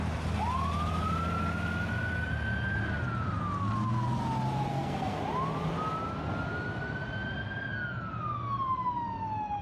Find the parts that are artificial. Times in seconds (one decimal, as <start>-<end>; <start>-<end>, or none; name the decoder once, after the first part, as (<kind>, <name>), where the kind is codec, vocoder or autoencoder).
4.7-5.2 (codec, SNAC)